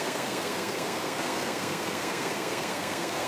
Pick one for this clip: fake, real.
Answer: fake